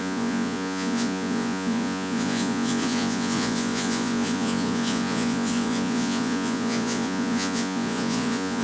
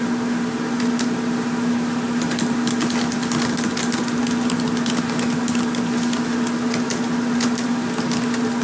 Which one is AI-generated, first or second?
first